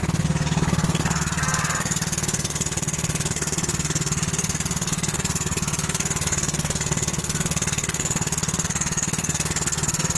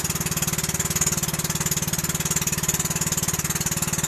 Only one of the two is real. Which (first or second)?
second